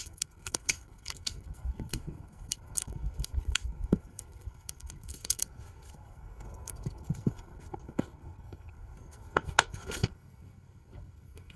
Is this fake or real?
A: fake